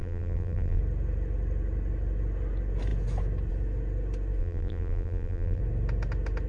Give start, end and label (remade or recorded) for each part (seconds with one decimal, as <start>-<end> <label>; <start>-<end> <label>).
0.0-0.8 remade; 0.8-4.4 recorded; 4.4-5.6 remade; 5.6-6.5 recorded